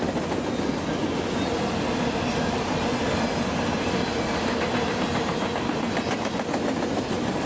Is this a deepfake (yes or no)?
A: no